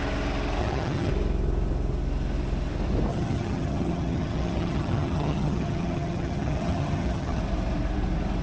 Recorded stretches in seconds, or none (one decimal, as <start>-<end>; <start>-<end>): 0.0-0.6; 1.1-3.1; 7.4-8.4